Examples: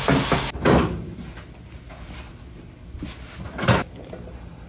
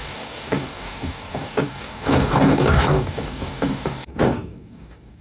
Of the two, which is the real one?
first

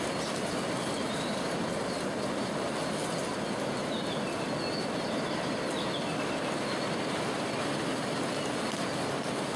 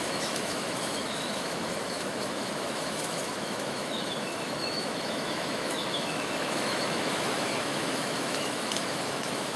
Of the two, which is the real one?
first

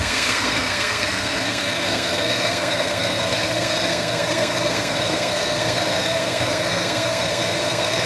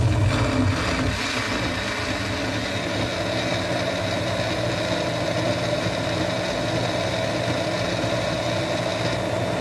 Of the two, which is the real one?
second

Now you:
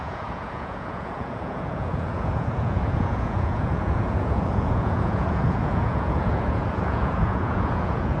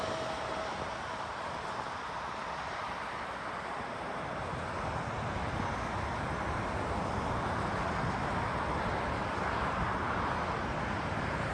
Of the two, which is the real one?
second